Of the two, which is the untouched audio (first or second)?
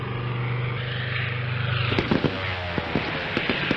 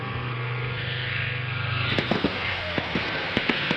first